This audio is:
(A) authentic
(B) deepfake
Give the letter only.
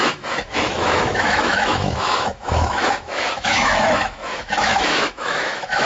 B